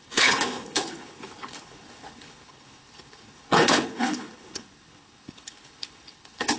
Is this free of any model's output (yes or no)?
no